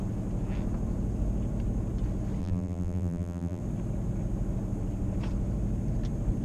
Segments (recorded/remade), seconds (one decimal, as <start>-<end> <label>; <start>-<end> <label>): 0.0-2.4 recorded; 2.4-3.6 remade; 3.6-6.4 recorded